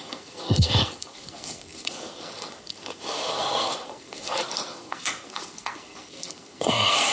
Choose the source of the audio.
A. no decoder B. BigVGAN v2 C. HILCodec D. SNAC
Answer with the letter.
D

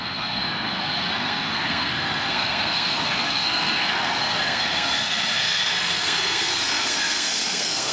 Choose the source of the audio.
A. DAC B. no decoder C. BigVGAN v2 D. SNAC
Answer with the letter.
D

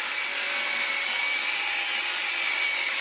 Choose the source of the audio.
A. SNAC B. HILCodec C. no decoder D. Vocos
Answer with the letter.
C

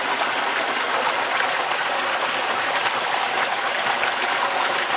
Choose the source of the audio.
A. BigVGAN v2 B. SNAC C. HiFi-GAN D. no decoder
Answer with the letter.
D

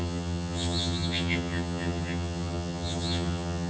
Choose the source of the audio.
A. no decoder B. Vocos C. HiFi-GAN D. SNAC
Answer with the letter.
C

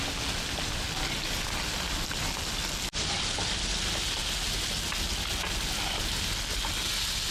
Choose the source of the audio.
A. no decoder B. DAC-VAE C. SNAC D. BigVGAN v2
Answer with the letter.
A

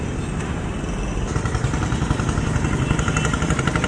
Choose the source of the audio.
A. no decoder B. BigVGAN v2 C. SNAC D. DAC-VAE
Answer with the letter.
A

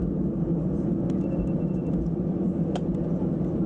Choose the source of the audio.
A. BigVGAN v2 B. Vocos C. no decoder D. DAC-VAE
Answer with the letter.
C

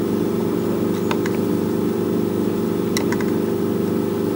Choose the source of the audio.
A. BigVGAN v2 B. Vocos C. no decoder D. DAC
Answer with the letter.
C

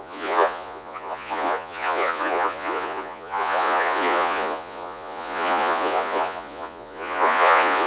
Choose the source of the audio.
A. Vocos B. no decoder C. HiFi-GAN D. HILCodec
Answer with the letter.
A